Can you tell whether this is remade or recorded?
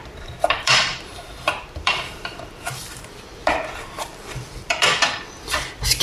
remade